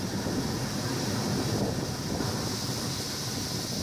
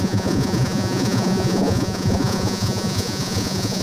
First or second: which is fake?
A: second